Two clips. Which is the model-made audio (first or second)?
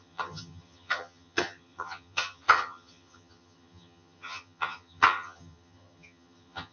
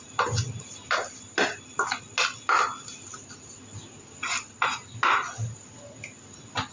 first